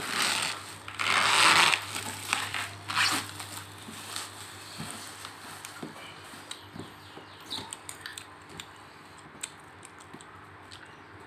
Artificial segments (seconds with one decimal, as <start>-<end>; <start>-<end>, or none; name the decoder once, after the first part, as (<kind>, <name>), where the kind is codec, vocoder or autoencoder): none